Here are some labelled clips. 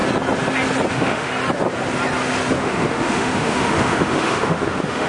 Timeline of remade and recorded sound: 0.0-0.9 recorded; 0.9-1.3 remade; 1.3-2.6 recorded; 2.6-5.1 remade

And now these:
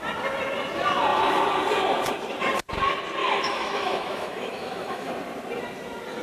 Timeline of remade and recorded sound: 0.0-3.2 recorded; 3.2-5.1 remade; 5.1-6.2 recorded

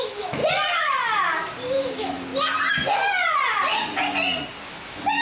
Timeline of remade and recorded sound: 0.0-0.4 remade; 0.4-1.7 recorded; 1.7-2.3 remade; 2.3-4.7 recorded; 4.7-5.2 remade

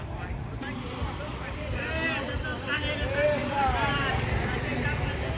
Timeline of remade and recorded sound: 0.0-5.4 recorded

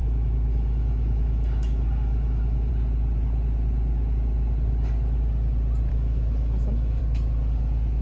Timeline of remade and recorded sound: 0.0-2.7 remade; 2.7-5.9 recorded; 5.9-7.0 remade; 7.0-8.0 recorded

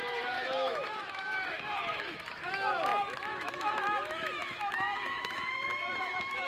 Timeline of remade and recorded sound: 0.0-6.5 remade

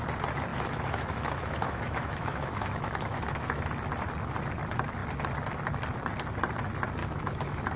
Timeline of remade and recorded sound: 0.0-0.5 recorded; 0.5-3.6 remade; 3.6-7.0 recorded; 7.0-7.8 remade

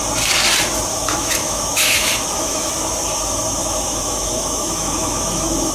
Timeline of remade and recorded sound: 0.0-0.9 recorded; 0.9-2.7 remade; 2.7-3.6 recorded; 3.6-5.7 remade